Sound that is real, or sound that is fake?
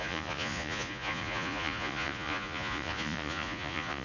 fake